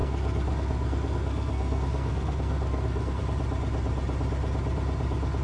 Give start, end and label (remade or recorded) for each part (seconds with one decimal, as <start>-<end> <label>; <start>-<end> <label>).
0.0-3.2 remade; 3.2-5.4 recorded